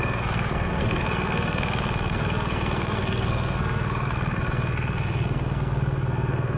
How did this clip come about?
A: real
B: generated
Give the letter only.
B